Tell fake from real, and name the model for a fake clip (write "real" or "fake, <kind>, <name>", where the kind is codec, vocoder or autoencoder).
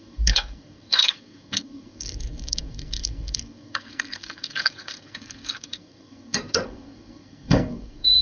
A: fake, codec, SNAC